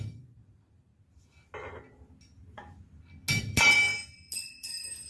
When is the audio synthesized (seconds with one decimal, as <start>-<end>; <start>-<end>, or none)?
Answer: 0.0-0.9; 3.4-3.9; 4.5-5.1